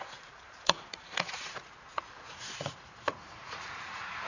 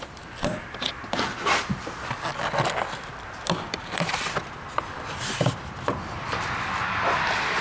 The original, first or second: second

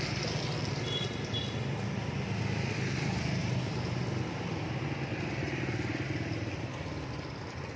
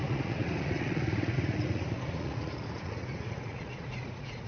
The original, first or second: first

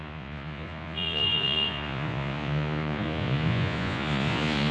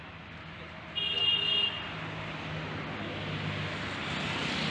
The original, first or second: second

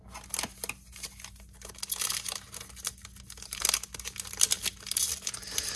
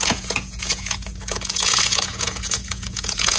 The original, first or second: first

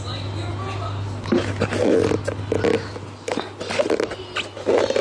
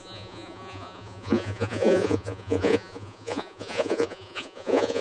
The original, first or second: first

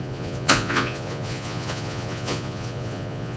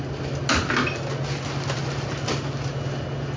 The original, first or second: second